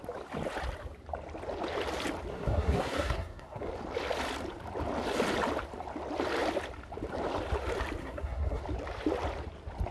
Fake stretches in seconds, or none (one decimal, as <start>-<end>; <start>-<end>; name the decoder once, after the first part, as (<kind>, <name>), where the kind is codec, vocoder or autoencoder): 2.3-3.7 (codec, SNAC); 8.0-8.6